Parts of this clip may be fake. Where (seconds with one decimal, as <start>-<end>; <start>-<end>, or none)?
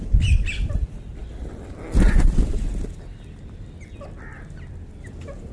none